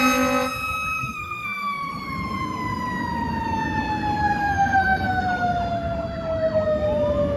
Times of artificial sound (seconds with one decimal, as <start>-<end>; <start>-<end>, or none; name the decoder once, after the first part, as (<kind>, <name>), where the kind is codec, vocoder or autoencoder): 1.0-1.9 (codec, SNAC); 4.4-5.2